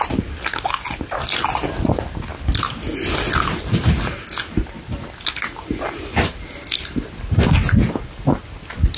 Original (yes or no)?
yes